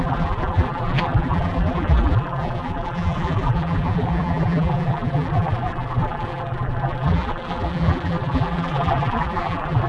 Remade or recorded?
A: remade